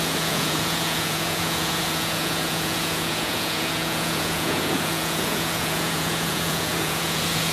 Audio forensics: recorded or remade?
remade